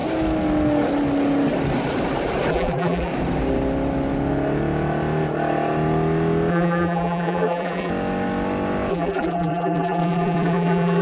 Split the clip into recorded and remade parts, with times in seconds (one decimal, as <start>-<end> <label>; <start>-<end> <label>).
0.0-2.5 recorded; 2.5-3.1 remade; 3.1-6.5 recorded; 6.5-7.9 remade; 7.9-8.9 recorded; 8.9-11.0 remade